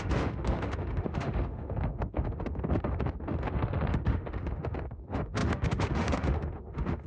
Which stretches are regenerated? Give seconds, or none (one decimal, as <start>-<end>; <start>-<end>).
0.0-7.1